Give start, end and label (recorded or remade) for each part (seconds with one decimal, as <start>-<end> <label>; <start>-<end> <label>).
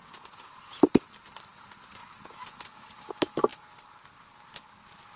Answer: 0.0-0.8 remade; 0.8-2.0 recorded; 2.0-3.1 remade; 3.1-5.2 recorded